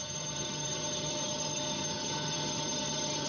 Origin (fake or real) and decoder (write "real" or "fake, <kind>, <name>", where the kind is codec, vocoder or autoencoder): fake, vocoder, HiFi-GAN